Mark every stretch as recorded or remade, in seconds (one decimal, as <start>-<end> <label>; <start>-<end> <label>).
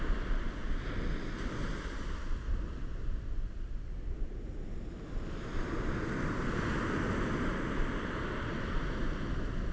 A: 0.0-9.7 recorded